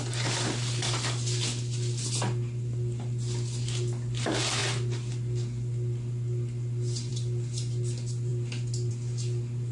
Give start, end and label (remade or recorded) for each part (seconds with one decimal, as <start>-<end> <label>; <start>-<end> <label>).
0.0-9.7 recorded